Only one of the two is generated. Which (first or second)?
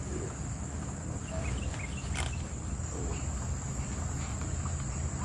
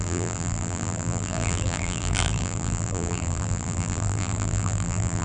second